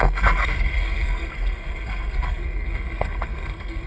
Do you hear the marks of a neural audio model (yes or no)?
yes